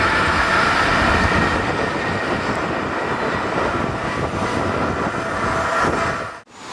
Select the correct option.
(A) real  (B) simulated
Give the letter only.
A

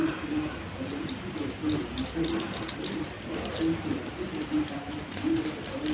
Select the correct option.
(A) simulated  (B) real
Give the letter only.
B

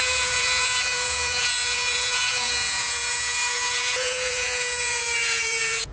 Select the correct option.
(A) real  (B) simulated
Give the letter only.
B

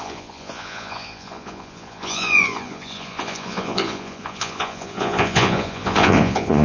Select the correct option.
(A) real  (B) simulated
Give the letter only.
B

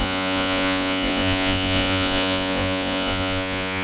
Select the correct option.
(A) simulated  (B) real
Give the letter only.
A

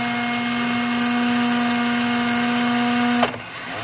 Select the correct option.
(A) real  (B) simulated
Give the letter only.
A